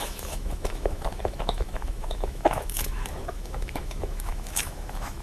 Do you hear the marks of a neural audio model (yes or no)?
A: yes